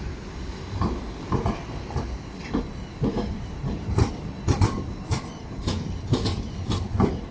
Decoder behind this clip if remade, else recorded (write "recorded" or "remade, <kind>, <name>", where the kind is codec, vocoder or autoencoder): recorded